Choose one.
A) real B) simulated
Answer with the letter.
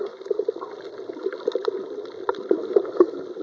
A